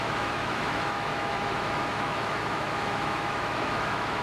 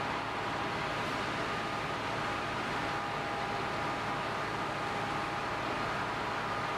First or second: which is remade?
first